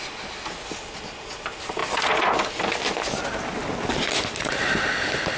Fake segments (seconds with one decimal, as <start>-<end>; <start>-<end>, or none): none